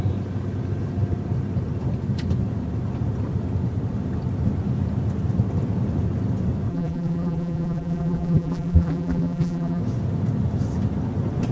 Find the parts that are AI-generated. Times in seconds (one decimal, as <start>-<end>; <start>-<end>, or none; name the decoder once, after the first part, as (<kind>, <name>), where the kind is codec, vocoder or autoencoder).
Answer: 6.7-9.8 (vocoder, BigVGAN v2)